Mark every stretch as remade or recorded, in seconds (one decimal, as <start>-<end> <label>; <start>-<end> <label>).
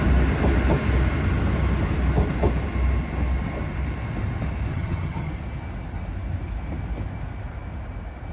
0.0-4.7 recorded; 4.7-5.3 remade; 5.3-8.3 recorded